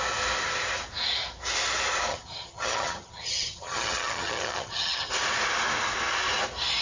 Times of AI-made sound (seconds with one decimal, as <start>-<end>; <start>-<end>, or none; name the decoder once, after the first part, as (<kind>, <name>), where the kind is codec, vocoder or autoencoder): 2.1-5.1 (vocoder, HiFi-GAN)